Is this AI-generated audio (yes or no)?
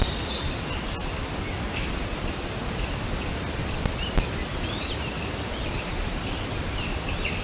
no